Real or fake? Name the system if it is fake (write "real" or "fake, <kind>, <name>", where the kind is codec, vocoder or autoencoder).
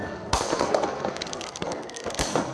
fake, codec, SNAC